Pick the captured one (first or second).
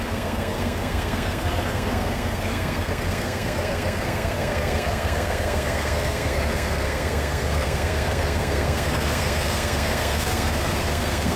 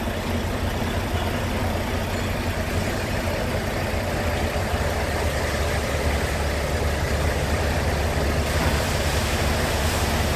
second